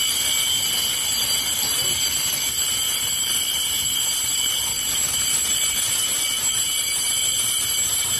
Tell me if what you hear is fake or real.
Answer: real